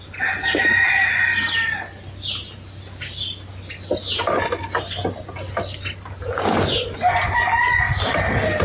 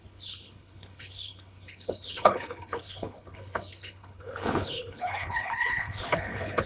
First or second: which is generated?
second